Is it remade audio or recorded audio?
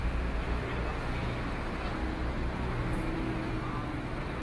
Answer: recorded